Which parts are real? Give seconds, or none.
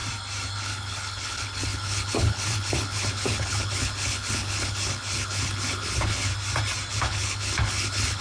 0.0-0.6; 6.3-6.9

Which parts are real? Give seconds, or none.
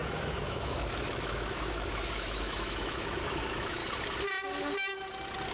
3.8-5.5